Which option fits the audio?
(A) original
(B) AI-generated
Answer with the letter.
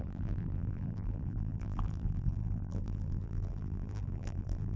B